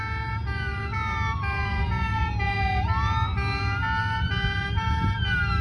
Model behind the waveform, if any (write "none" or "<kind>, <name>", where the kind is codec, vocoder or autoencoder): none